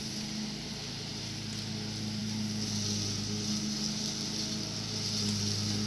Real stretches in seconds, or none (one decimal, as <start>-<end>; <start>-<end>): 0.0-5.9